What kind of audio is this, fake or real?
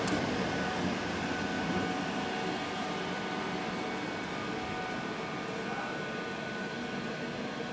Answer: real